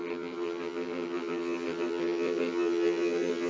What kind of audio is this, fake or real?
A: fake